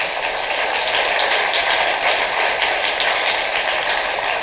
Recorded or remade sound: recorded